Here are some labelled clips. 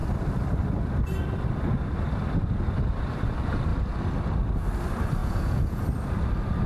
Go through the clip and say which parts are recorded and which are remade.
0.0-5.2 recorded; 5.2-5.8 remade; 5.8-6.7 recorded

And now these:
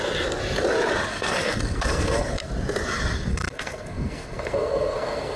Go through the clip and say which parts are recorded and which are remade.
0.0-1.1 recorded; 1.1-2.5 remade; 2.5-3.3 recorded; 3.3-5.4 remade

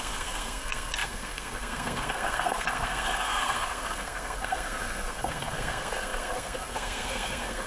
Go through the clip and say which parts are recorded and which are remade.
0.0-7.7 remade

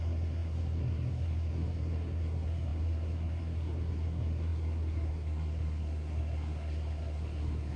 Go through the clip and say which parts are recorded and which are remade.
0.0-7.8 remade

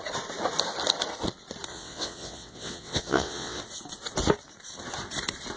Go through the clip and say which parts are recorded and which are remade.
0.0-1.7 recorded; 1.7-3.6 remade; 3.6-5.6 recorded

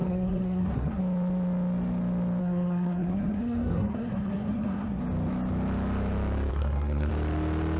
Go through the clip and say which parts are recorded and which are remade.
0.0-1.0 remade; 1.0-2.4 recorded; 2.4-5.0 remade; 5.0-6.5 recorded; 6.5-7.1 remade; 7.1-7.8 recorded

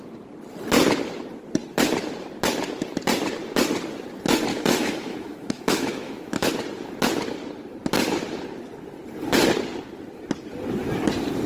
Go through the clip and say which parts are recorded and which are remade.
0.0-4.5 recorded; 4.5-6.5 remade; 6.5-11.5 recorded